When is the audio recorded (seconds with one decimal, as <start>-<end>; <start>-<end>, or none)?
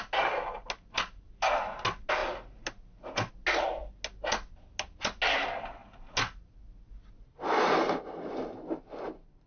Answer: 0.0-9.5